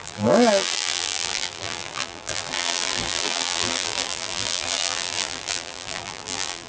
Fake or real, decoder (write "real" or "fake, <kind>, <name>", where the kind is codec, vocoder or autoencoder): fake, vocoder, BigVGAN v2